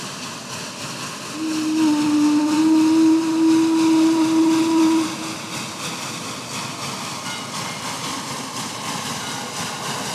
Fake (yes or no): no